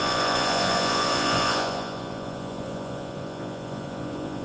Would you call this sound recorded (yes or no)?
no